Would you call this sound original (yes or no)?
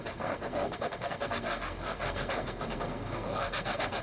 no